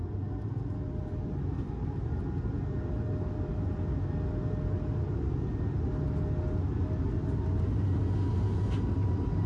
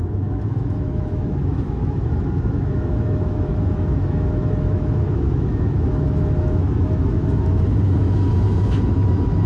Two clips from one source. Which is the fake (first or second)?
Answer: second